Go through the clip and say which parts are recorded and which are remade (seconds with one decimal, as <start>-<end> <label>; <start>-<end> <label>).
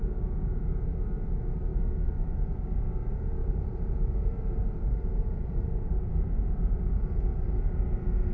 0.0-3.4 recorded; 3.4-6.1 remade; 6.1-7.3 recorded; 7.3-7.9 remade; 7.9-8.3 recorded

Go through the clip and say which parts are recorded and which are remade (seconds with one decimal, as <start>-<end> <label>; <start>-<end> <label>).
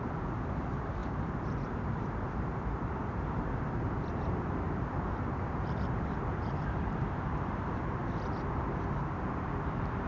0.0-8.0 remade; 8.0-8.6 recorded; 8.6-10.1 remade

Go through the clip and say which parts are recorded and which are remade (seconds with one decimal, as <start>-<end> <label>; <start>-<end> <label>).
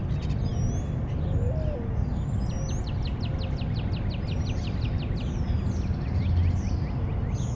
0.0-7.6 recorded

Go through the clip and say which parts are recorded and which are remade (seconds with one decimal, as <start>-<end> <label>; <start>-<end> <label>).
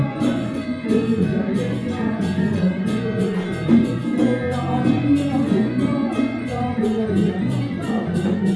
0.0-4.0 remade; 4.0-4.9 recorded; 4.9-8.6 remade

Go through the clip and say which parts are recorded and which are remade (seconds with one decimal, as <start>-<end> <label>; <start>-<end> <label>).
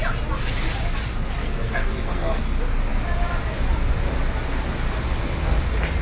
0.0-1.4 recorded; 1.4-2.4 remade; 2.4-6.0 recorded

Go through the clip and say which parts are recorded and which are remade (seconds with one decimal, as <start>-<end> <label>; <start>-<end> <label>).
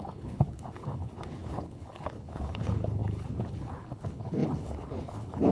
0.0-5.5 remade